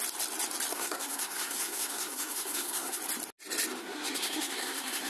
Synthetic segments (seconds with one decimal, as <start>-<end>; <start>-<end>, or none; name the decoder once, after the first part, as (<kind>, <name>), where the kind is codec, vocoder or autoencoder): 0.7-3.0 (codec, SNAC); 3.8-5.1